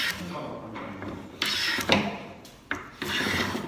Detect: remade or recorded remade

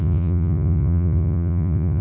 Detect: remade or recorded remade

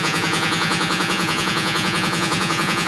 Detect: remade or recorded remade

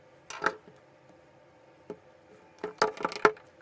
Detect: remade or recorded recorded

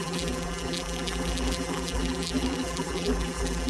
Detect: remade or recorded remade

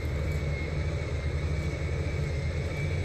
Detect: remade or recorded recorded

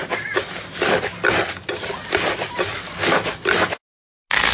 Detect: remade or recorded recorded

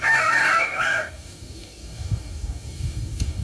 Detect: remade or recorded remade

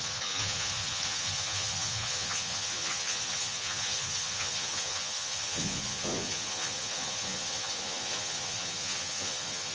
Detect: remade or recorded remade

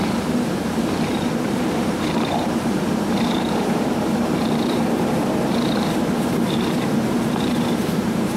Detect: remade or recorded remade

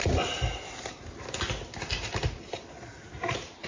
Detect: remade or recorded recorded